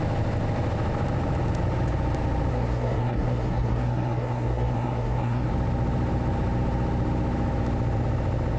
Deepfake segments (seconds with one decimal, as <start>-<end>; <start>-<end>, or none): 2.5-5.5